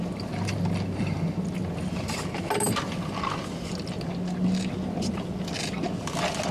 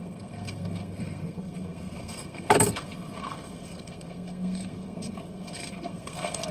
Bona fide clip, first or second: first